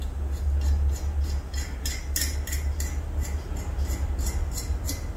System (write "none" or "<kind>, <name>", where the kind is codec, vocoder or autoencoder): none